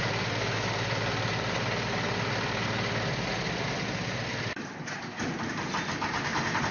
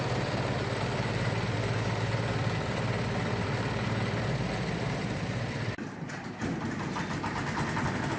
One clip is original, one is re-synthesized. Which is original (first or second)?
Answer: first